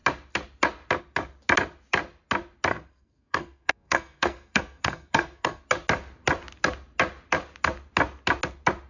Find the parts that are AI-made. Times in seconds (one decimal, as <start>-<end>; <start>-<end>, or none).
2.7-5.6